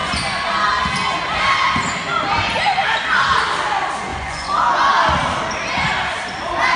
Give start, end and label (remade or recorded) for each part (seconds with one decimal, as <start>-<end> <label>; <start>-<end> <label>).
0.0-0.5 remade; 0.5-4.1 recorded; 4.1-4.9 remade; 4.9-6.8 recorded

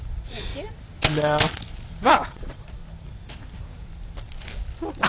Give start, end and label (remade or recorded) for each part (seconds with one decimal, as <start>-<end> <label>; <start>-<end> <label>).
0.0-0.5 remade; 0.5-2.1 recorded; 2.1-2.8 remade; 2.8-5.1 recorded

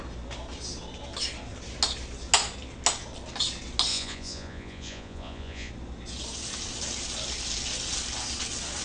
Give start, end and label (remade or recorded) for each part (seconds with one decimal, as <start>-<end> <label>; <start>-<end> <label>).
0.0-3.9 recorded; 3.9-5.7 remade; 5.7-8.8 recorded

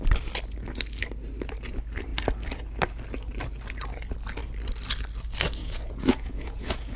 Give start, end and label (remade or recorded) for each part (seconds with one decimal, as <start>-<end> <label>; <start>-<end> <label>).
0.0-5.6 recorded; 5.6-7.0 remade